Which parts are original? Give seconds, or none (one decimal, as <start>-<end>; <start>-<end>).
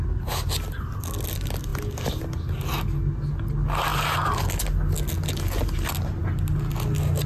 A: 0.0-7.3